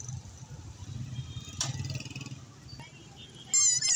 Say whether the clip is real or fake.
real